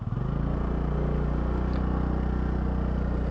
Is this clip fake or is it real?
real